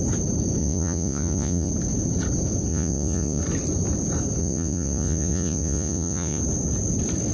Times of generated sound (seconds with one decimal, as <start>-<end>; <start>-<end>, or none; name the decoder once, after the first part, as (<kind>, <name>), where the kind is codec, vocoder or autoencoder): 0.6-1.7 (vocoder, Vocos); 2.7-3.4; 4.4-6.4